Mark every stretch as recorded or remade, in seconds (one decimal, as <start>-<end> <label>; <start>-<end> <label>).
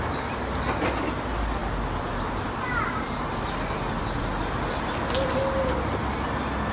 0.0-6.7 recorded